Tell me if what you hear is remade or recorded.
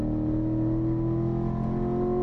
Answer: recorded